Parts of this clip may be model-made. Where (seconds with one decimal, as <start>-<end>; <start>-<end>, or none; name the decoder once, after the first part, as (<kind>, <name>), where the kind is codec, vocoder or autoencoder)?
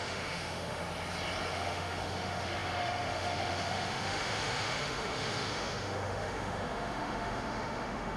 0.0-0.8 (autoencoder, DAC-VAE); 1.5-8.2